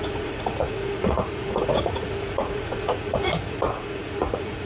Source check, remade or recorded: remade